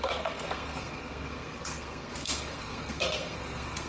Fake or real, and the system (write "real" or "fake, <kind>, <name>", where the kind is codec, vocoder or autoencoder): fake, codec, SNAC